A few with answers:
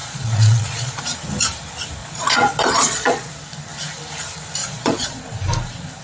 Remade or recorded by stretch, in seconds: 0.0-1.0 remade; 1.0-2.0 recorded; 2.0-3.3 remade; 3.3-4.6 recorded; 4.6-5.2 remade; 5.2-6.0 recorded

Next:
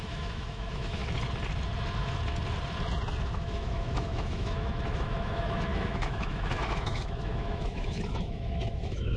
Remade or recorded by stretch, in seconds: 0.0-1.0 remade; 1.0-3.2 recorded; 3.2-9.2 remade

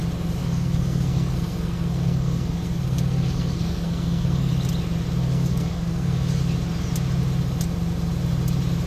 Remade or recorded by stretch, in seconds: 0.0-0.4 recorded; 0.4-4.5 remade; 4.5-5.2 recorded; 5.2-6.4 remade; 6.4-8.9 recorded

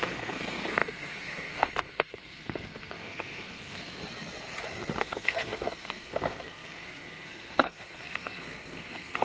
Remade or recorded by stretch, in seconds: 0.0-4.0 remade; 4.0-5.0 recorded; 5.0-9.2 remade